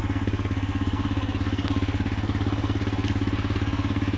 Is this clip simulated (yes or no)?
yes